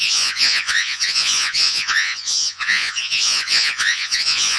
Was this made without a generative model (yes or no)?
no